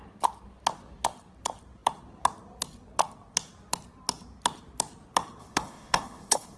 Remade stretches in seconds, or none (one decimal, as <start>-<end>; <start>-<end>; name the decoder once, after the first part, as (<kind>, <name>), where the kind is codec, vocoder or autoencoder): 5.4-6.6 (codec, HILCodec)